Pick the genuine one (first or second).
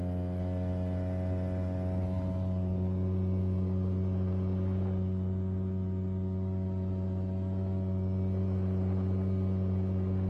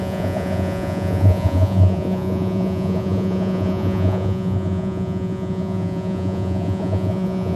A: first